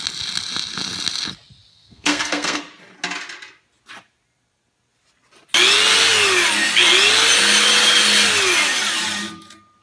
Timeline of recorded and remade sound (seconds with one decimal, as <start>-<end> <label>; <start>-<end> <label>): 0.0-1.7 recorded; 1.7-2.6 remade; 2.6-9.8 recorded